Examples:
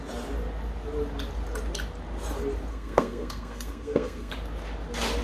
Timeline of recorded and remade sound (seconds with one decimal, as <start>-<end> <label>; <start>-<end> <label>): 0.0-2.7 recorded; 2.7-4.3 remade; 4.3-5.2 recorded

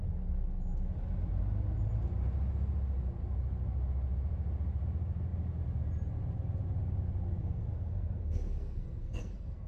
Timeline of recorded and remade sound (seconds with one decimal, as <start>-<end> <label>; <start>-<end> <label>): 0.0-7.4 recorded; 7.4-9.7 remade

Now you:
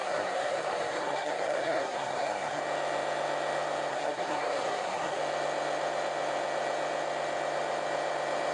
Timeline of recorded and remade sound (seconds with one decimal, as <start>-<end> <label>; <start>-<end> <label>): 0.0-2.6 remade; 2.6-3.9 recorded; 3.9-5.2 remade; 5.2-8.5 recorded

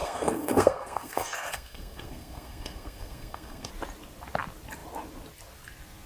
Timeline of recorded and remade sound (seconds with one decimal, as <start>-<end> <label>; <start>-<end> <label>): 0.0-3.7 remade; 3.7-6.1 recorded